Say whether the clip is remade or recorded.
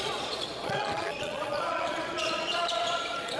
remade